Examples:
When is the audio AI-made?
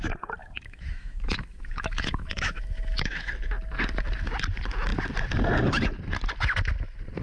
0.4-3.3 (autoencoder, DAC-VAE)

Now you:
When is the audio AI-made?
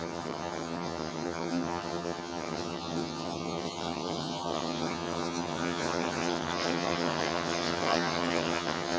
0.0-9.0 (vocoder, HiFi-GAN)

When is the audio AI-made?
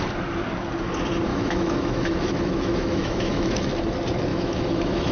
1.3-3.7 (autoencoder, DAC-VAE); 4.3-5.1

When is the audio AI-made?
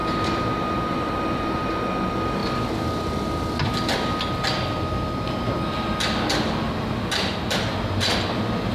0.0-1.7 (vocoder, BigVGAN v2)